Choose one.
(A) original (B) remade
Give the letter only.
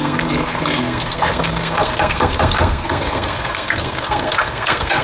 B